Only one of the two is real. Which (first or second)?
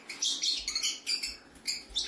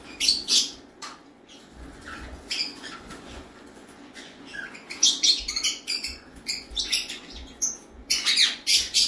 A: first